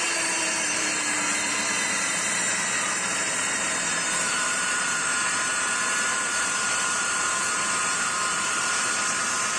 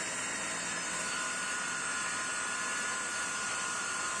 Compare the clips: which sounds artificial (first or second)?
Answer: first